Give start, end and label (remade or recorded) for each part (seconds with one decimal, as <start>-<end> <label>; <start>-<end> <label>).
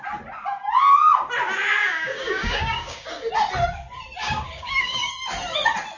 0.0-1.8 recorded; 1.8-3.3 remade; 3.3-4.2 recorded; 4.2-5.1 remade; 5.1-6.0 recorded